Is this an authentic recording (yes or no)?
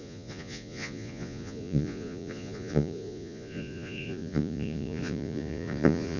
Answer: no